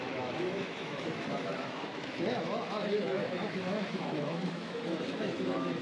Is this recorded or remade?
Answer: remade